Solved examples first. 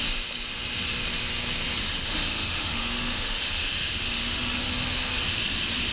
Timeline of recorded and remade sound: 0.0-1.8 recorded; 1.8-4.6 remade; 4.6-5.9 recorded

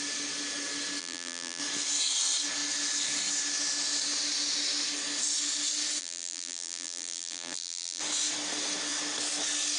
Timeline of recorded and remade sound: 0.0-1.0 recorded; 1.0-1.6 remade; 1.6-6.0 recorded; 6.0-8.0 remade; 8.0-9.8 recorded

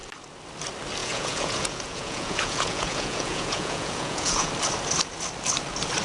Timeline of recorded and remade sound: 0.0-1.0 recorded; 1.0-4.5 remade; 4.5-6.0 recorded

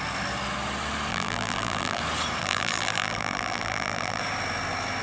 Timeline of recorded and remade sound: 0.0-1.1 recorded; 1.1-2.0 remade; 2.0-2.4 recorded; 2.4-4.2 remade; 4.2-5.0 recorded

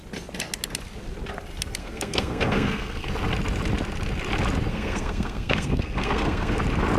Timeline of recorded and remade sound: 0.0-1.8 recorded; 1.8-3.1 remade; 3.1-4.7 recorded; 4.7-6.6 remade; 6.6-7.0 recorded

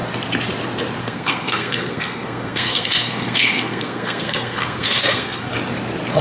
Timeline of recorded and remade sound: 0.0-1.0 recorded; 1.0-5.5 remade; 5.5-6.2 recorded

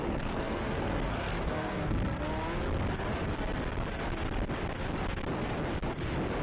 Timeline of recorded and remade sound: 0.0-2.2 remade; 2.2-6.4 recorded

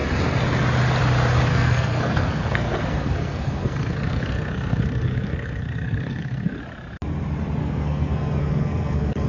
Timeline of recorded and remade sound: 0.0-1.5 recorded; 1.5-6.6 remade; 6.6-7.6 recorded; 7.6-9.3 remade